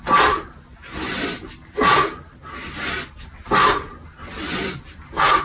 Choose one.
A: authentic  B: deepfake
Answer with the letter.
A